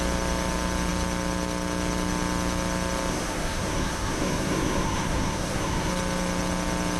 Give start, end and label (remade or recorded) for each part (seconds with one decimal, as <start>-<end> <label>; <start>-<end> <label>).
0.0-3.1 recorded; 3.1-5.9 remade; 5.9-7.0 recorded